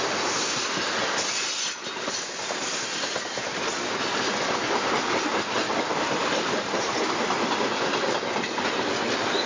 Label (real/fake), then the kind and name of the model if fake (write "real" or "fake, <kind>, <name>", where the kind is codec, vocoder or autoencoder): real